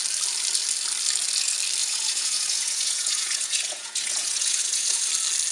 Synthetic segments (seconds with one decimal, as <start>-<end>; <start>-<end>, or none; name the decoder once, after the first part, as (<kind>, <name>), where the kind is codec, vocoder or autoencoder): 1.8-5.1 (vocoder, Vocos)